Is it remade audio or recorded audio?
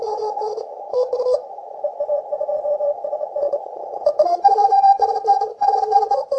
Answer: remade